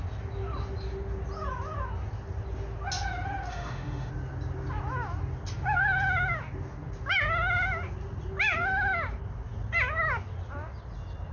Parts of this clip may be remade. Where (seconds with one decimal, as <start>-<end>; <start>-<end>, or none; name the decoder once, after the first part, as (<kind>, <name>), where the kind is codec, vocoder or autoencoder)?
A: 3.5-4.1 (autoencoder, DAC-VAE)